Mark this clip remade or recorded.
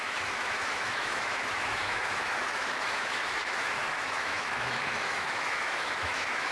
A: remade